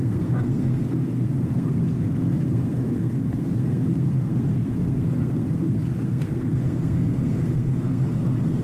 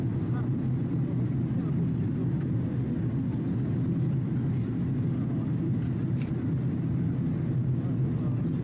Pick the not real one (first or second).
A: first